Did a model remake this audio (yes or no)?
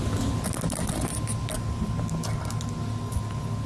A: no